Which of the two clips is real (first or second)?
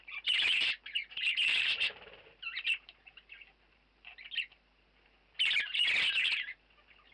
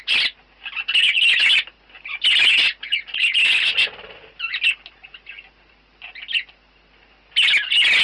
second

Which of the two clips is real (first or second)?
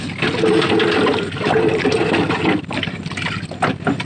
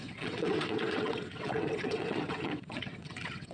first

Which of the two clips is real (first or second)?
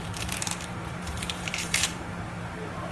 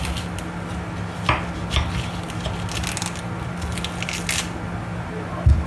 second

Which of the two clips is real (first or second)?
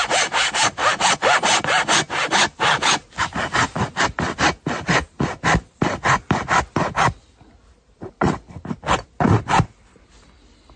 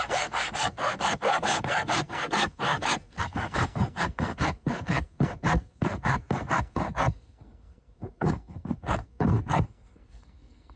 first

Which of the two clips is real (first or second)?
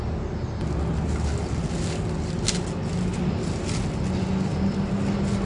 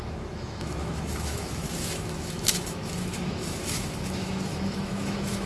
first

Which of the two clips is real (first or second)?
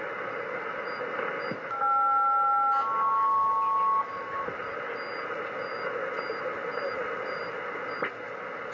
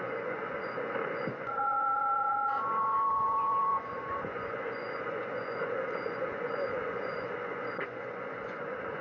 first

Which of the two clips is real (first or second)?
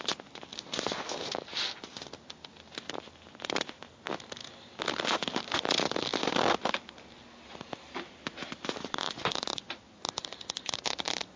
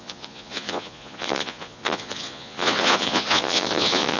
first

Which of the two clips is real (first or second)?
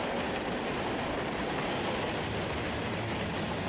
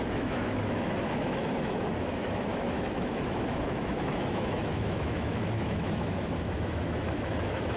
first